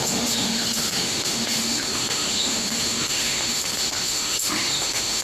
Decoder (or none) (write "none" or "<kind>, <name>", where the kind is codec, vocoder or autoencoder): autoencoder, DAC-VAE